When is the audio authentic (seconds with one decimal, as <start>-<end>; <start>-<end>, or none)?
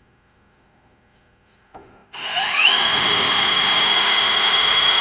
none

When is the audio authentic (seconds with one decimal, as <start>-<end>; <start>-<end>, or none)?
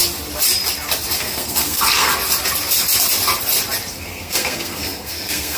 0.0-1.2; 2.1-3.9